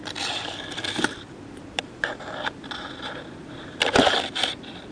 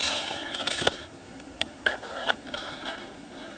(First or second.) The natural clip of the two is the first